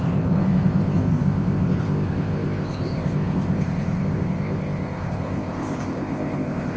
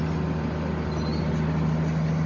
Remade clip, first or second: first